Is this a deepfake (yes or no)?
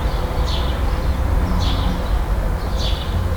no